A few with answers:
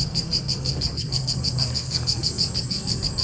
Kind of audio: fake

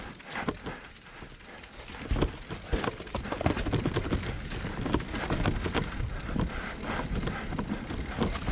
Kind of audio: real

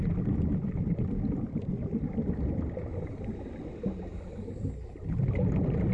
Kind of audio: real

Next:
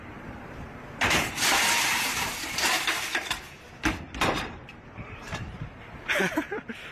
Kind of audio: fake